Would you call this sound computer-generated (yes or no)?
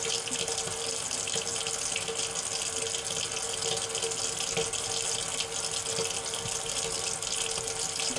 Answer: no